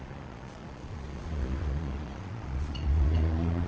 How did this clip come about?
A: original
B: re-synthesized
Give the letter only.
B